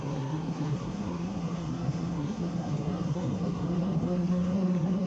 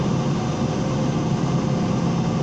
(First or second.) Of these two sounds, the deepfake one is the first